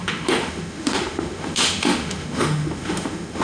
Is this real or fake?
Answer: fake